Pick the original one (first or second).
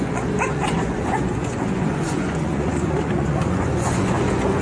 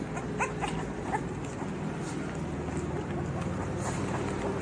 second